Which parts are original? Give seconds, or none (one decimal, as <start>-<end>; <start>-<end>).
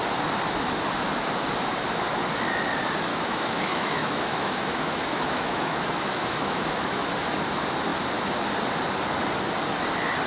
0.0-3.1; 7.1-10.3